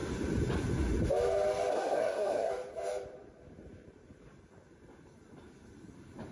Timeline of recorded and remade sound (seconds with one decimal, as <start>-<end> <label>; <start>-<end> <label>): 0.0-1.7 recorded; 1.7-2.5 remade; 2.5-6.3 recorded